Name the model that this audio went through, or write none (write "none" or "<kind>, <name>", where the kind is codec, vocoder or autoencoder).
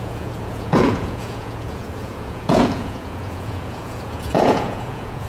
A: vocoder, Vocos